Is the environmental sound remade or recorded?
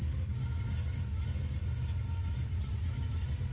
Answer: recorded